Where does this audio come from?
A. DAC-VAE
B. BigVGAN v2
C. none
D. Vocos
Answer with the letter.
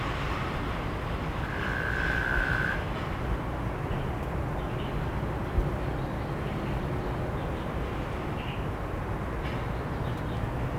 C